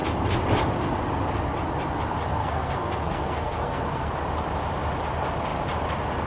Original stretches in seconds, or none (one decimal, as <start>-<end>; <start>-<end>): 0.0-2.4; 4.1-6.3